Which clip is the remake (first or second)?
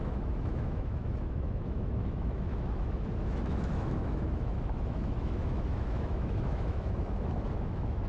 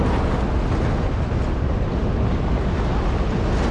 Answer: first